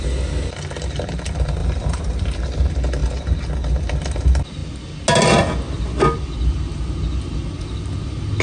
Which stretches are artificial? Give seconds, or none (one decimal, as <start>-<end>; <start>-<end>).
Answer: 1.6-2.2